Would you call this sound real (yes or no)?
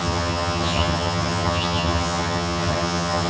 no